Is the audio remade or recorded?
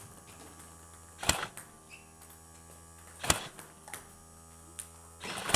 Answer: recorded